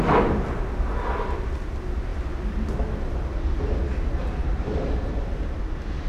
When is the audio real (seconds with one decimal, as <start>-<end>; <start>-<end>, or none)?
0.0-4.4; 5.6-6.1

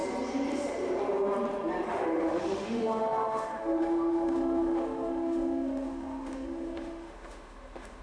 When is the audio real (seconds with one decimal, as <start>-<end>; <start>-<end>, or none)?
0.0-1.9

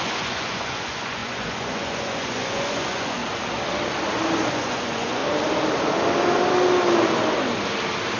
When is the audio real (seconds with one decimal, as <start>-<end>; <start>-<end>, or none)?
3.2-4.5; 5.2-8.2

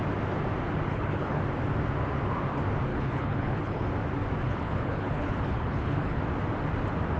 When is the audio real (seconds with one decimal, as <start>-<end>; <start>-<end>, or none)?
0.0-0.9; 1.4-2.9; 3.9-4.4; 6.2-7.2

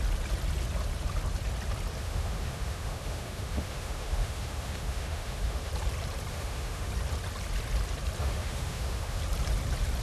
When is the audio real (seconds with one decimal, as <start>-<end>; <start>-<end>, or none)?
0.0-2.0; 5.7-6.3; 6.9-8.2; 9.2-10.0

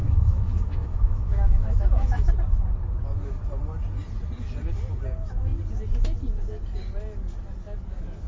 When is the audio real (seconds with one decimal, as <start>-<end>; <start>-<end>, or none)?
2.3-8.3

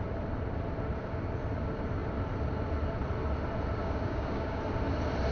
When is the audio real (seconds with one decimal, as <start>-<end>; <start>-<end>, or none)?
0.0-3.8; 4.6-5.3

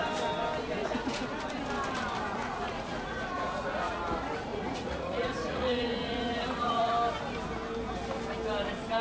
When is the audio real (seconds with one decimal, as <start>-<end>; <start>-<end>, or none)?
0.0-0.8; 1.4-2.4; 4.0-4.5; 6.9-9.0